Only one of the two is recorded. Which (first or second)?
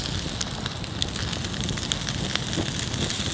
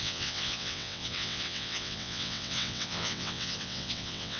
first